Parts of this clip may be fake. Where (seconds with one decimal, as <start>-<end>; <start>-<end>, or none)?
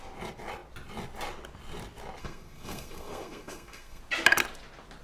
2.2-4.0